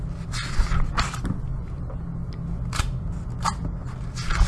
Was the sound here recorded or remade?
recorded